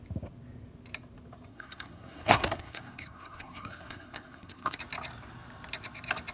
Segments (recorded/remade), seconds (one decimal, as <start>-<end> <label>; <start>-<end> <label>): 0.0-1.5 recorded; 1.5-4.8 remade; 4.8-6.3 recorded